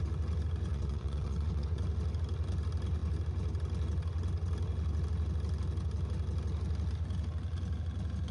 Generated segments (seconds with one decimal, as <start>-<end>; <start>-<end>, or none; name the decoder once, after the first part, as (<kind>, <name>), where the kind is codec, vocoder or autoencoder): 0.7-1.8 (vocoder, Vocos)